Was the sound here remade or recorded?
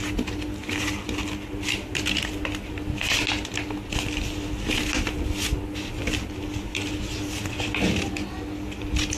recorded